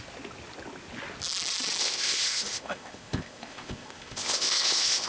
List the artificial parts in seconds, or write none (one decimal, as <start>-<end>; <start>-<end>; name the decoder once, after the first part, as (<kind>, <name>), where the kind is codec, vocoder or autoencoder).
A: 1.8-5.1 (codec, ZipCodec)